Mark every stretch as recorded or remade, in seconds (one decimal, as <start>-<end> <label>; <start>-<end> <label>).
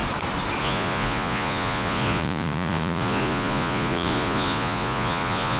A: 0.0-0.6 recorded; 0.6-5.6 remade